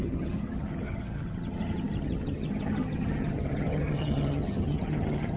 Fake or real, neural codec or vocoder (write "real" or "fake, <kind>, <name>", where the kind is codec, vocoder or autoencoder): fake, vocoder, HiFi-GAN